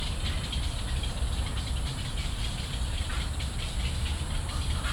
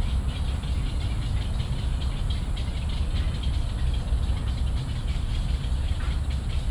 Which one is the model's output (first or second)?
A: first